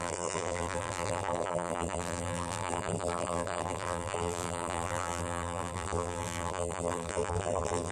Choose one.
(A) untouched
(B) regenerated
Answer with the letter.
B